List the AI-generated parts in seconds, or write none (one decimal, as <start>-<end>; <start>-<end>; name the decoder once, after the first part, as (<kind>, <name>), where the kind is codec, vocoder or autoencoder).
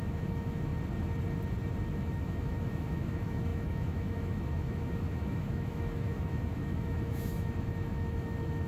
0.0-0.7 (autoencoder, DAC-VAE); 1.9-8.7